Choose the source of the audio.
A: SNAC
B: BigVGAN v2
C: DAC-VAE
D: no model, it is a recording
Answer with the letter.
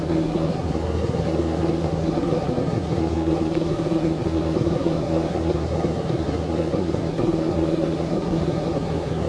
A